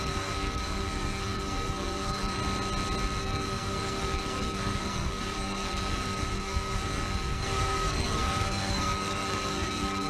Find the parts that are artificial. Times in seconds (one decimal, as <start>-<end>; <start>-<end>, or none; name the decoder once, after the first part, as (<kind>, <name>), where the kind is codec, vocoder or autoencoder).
0.0-2.4 (codec, SNAC); 3.2-10.1